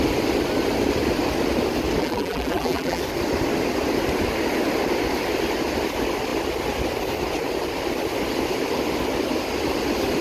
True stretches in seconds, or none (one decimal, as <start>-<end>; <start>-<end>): 0.0-2.0; 3.0-10.2